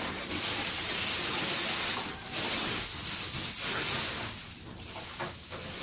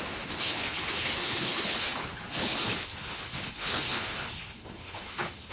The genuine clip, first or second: first